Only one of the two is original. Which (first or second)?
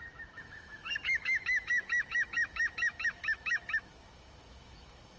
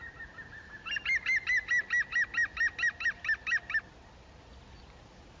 second